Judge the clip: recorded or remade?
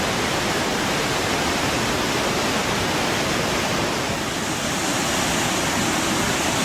recorded